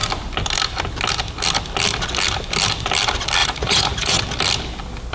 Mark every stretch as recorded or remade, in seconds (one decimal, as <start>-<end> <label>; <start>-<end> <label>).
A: 0.0-3.4 recorded; 3.4-4.2 remade; 4.2-5.1 recorded